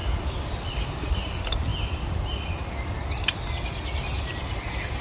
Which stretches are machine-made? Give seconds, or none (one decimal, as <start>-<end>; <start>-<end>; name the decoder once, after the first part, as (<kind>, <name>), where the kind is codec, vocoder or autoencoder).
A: none